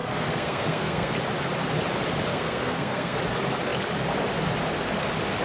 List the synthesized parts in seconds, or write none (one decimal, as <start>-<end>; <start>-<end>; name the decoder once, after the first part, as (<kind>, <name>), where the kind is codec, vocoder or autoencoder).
0.0-1.1 (codec, SNAC); 2.3-3.2